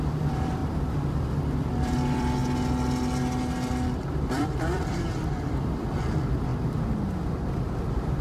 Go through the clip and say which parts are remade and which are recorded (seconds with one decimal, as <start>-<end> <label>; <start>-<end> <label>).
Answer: 0.0-0.6 remade; 0.6-1.3 recorded; 1.3-2.4 remade; 2.4-3.7 recorded; 3.7-6.5 remade; 6.5-7.4 recorded; 7.4-8.2 remade